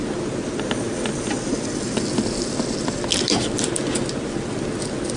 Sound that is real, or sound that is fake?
real